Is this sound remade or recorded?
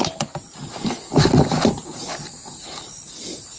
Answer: recorded